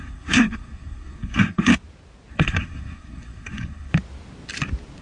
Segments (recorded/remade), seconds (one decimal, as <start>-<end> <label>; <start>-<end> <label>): 0.0-1.7 remade; 1.7-2.3 recorded; 2.3-3.9 remade; 3.9-5.0 recorded